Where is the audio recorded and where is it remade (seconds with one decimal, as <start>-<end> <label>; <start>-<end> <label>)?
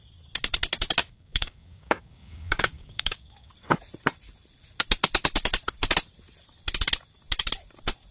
0.0-1.0 recorded; 1.0-3.5 remade; 3.5-8.1 recorded